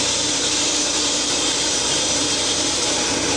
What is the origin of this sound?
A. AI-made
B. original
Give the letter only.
A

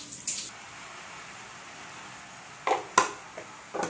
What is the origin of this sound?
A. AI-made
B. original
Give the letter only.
B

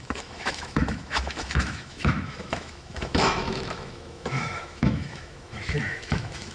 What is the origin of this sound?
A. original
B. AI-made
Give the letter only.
B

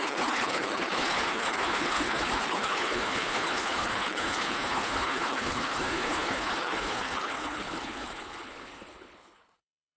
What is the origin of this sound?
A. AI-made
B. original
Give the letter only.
A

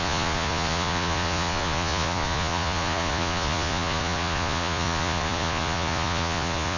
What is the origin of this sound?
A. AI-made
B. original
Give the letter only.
A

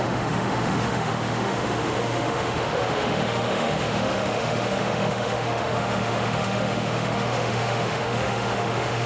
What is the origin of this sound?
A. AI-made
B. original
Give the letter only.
A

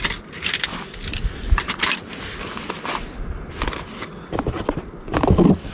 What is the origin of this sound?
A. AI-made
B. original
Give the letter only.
B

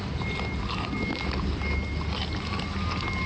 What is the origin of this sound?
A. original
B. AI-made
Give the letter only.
A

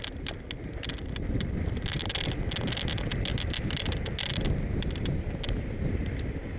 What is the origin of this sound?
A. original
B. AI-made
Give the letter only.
A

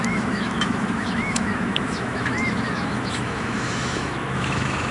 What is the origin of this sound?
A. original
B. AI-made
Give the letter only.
B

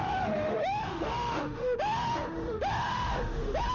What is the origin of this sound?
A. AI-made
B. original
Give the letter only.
A